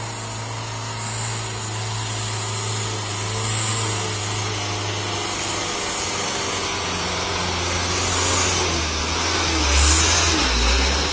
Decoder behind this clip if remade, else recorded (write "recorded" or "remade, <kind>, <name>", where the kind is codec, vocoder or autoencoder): recorded